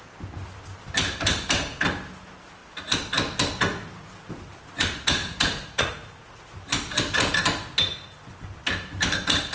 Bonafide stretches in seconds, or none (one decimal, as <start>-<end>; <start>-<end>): 0.0-5.2; 5.9-9.5